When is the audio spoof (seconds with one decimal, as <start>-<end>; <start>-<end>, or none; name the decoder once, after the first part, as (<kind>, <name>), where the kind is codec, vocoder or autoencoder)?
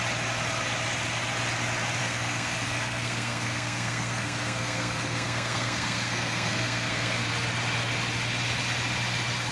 2.0-7.3 (codec, SNAC)